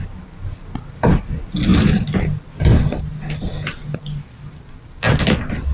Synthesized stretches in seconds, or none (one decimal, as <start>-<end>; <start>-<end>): none